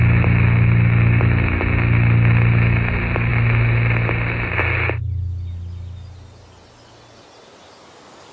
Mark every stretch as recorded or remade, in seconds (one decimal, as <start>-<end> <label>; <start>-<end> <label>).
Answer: 0.0-8.3 recorded